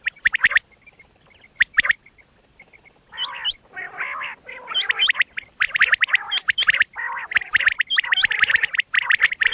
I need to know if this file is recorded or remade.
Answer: remade